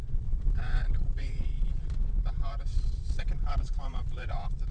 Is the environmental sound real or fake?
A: fake